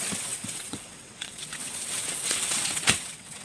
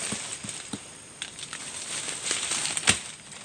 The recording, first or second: second